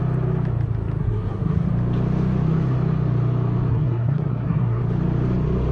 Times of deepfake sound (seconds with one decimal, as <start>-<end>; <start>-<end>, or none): 1.0-1.7; 3.7-4.8